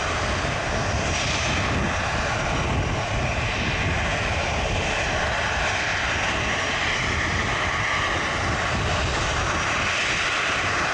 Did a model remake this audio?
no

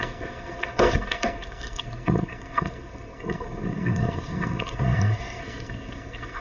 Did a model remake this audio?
yes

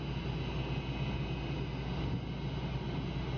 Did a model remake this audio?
no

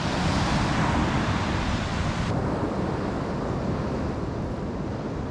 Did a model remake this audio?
no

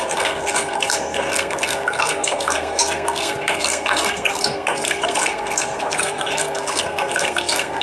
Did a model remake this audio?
yes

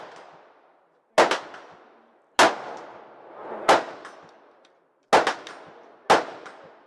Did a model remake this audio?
no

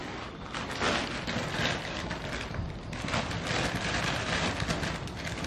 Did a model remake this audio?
no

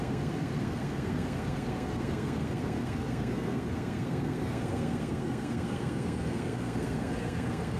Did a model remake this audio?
yes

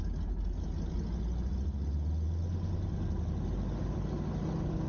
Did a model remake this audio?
no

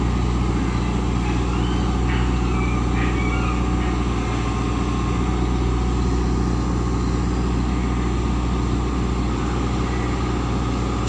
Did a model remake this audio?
no